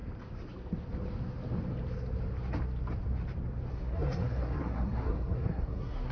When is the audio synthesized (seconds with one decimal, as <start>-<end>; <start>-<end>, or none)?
3.7-6.1